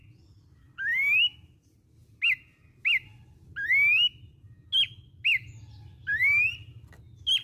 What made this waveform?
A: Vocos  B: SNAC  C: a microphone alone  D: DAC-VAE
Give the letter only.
C